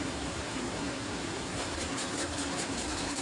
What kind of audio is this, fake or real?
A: fake